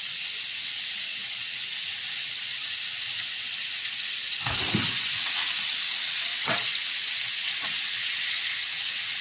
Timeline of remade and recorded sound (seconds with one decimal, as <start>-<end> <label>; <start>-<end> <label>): 0.0-9.2 remade